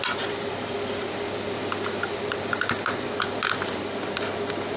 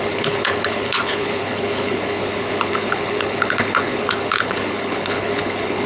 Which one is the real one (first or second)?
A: first